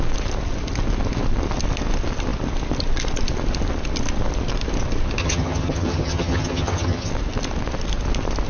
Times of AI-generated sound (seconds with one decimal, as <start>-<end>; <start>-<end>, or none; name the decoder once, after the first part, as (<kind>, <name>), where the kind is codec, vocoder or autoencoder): 5.2-7.1 (vocoder, HiFi-GAN)